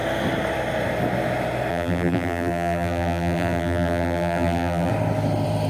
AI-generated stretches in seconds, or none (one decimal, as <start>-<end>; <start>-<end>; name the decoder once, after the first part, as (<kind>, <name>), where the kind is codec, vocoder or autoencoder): 1.7-4.9 (vocoder, BigVGAN v2)